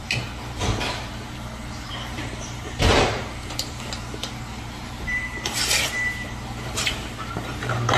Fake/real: fake